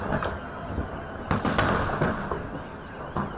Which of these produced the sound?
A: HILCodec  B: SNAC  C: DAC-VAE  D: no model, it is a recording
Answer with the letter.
D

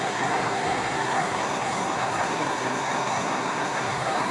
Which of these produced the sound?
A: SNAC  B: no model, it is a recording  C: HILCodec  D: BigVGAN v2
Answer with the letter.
A